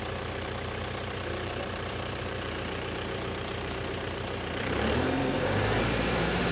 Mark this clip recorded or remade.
remade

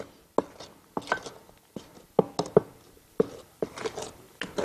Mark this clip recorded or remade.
recorded